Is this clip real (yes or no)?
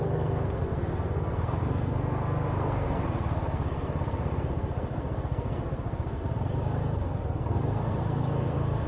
no